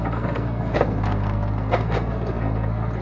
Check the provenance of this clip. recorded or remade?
remade